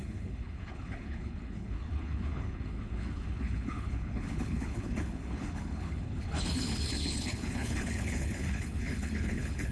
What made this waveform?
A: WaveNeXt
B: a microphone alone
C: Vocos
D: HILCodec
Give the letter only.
D